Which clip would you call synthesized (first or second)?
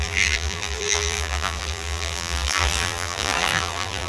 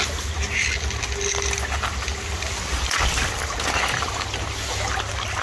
first